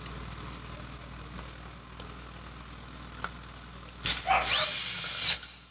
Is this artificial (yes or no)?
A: no